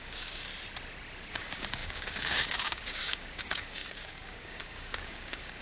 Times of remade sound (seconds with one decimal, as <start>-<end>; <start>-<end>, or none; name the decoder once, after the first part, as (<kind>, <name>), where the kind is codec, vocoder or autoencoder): 0.0-0.5 (codec, DAC); 1.3-5.6